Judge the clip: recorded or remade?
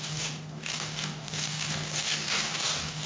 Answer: remade